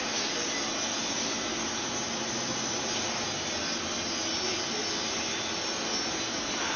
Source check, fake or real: real